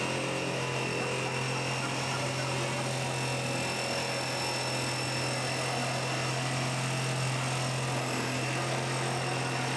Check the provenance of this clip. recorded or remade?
recorded